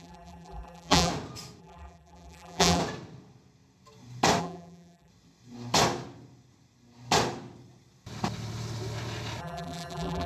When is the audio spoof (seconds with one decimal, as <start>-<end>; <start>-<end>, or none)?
0.0-1.1; 1.6-2.8; 4.4-5.1; 9.4-10.3